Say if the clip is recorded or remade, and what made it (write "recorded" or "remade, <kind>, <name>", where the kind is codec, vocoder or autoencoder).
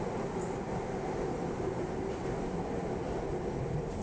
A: recorded